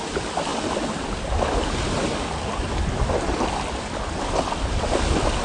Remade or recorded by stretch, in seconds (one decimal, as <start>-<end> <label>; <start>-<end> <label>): 0.0-5.4 recorded